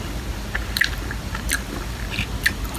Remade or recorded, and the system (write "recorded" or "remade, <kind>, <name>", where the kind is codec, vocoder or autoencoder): recorded